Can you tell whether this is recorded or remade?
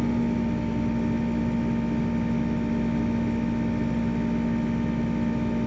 recorded